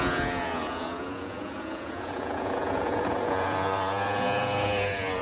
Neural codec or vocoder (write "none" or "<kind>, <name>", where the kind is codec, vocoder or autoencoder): vocoder, Vocos